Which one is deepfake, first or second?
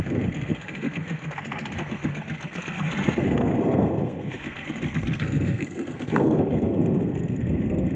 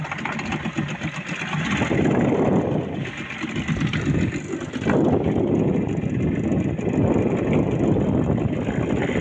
first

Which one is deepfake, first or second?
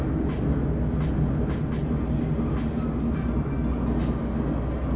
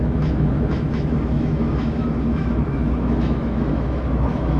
second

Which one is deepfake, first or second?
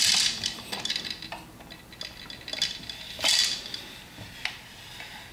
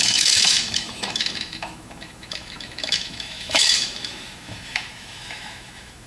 second